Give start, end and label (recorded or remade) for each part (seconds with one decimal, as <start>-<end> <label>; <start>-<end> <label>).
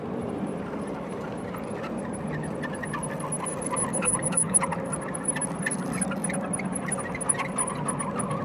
0.0-3.9 recorded; 3.9-4.6 remade; 4.6-8.4 recorded